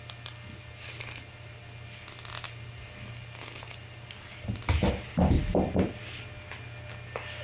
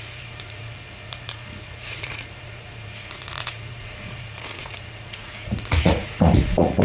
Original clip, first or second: first